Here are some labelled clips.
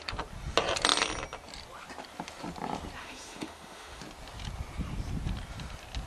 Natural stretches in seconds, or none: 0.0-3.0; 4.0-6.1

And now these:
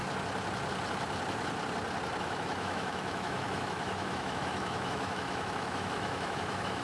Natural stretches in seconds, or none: 0.0-2.2

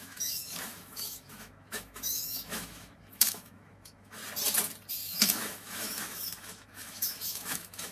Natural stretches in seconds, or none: 4.2-4.9

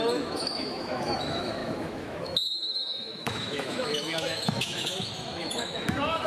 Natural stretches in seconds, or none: none

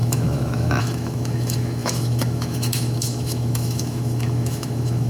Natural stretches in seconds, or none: none